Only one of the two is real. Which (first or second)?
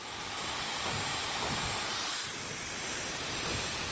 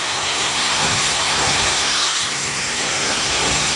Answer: first